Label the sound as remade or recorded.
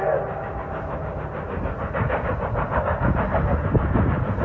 recorded